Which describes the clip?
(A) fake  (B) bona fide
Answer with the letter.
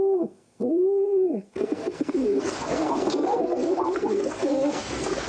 A